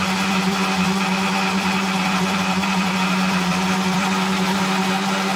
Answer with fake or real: fake